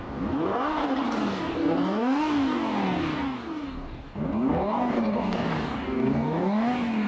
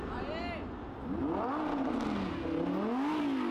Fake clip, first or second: first